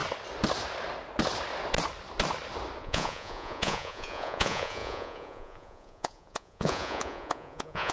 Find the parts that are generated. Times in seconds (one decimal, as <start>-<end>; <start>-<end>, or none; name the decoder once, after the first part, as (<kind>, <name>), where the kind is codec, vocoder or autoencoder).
2.8-7.9 (vocoder, Vocos)